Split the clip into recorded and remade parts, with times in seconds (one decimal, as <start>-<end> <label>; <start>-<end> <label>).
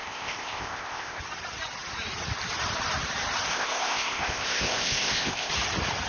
0.0-1.2 remade; 1.2-3.5 recorded; 3.5-5.5 remade; 5.5-6.1 recorded